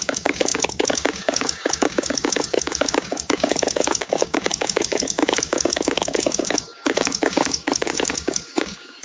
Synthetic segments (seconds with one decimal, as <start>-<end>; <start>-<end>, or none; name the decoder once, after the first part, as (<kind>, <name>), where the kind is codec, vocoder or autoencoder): 0.0-9.0 (codec, DAC)